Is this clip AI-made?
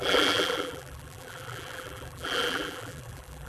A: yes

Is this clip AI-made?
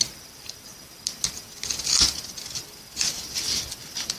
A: no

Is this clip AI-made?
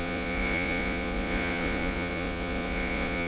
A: yes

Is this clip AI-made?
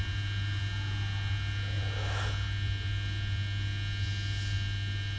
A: no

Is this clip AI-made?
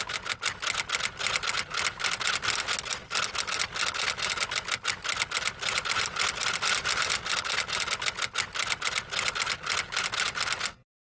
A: no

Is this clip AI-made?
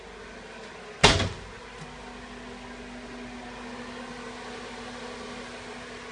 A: no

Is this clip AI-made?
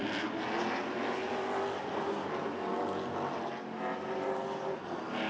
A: no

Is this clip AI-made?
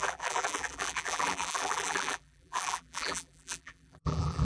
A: yes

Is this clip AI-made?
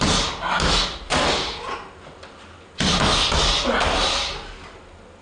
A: no